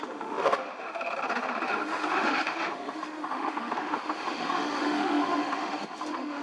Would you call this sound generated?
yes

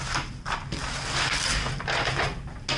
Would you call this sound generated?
no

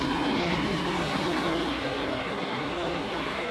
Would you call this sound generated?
yes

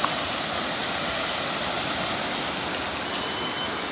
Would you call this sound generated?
no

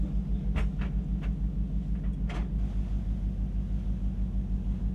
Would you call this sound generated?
no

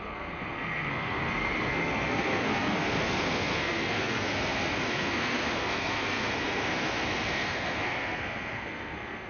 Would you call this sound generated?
yes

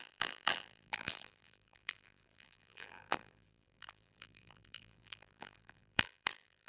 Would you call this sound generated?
yes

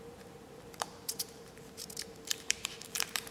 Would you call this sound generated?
yes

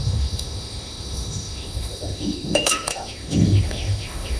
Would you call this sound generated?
yes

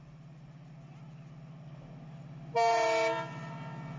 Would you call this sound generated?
no